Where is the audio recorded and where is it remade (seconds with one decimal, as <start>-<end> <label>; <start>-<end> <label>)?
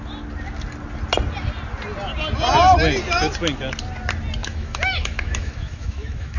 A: 0.0-4.4 recorded; 4.4-6.4 remade